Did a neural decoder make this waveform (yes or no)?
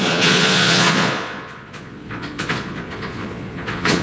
yes